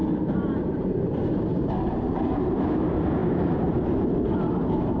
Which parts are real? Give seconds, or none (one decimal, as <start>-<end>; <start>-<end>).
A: 2.6-5.0